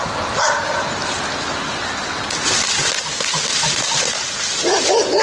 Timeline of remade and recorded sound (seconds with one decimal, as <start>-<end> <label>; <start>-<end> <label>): 0.0-5.2 recorded

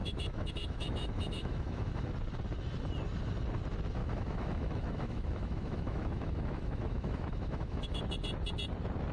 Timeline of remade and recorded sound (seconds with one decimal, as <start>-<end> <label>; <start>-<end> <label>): 0.0-2.1 remade; 2.1-4.0 recorded; 4.0-8.0 remade; 8.0-9.1 recorded

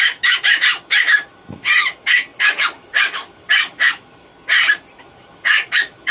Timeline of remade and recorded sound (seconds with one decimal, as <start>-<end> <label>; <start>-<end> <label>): 0.0-4.3 remade; 4.3-5.0 recorded; 5.0-6.1 remade

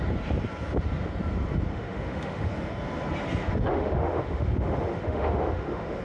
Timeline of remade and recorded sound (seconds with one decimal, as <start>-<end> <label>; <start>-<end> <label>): 0.0-1.7 recorded; 1.7-2.5 remade; 2.5-3.7 recorded; 3.7-6.0 remade

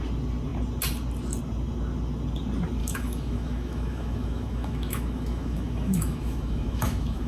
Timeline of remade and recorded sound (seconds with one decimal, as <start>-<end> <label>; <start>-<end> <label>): 0.0-2.8 recorded; 2.8-7.3 remade

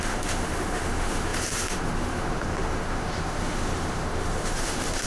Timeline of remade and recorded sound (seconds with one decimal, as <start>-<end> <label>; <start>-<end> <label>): 0.0-5.1 remade